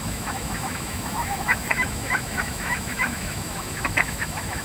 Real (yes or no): no